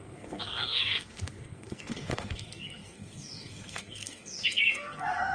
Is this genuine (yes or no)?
no